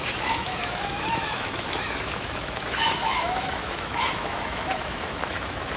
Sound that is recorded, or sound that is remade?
remade